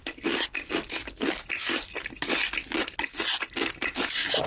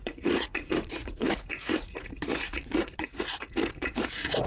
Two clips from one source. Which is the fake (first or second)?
second